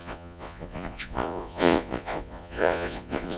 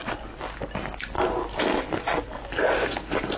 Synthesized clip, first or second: first